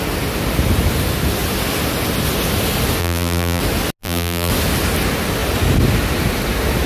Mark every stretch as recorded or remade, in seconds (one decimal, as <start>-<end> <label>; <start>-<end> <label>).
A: 0.0-3.0 recorded; 3.0-3.6 remade; 3.6-4.0 recorded; 4.0-4.5 remade; 4.5-6.9 recorded